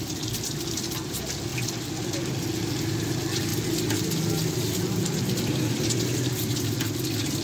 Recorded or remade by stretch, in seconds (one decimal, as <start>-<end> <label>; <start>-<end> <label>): 0.0-7.4 recorded